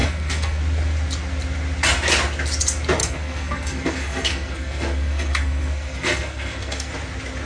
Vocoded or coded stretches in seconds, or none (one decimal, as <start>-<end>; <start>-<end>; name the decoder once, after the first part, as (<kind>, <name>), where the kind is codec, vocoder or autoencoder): 0.0-0.6 (codec, SNAC); 3.0-6.9